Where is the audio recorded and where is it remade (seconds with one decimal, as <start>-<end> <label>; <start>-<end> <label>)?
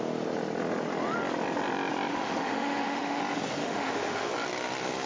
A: 0.0-2.1 recorded; 2.1-3.2 remade; 3.2-3.6 recorded; 3.6-4.3 remade; 4.3-5.1 recorded